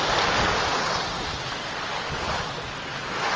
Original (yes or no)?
yes